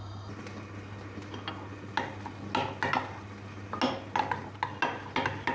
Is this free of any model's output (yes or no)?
yes